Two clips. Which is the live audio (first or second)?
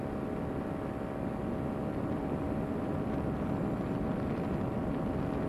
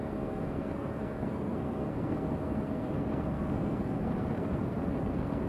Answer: first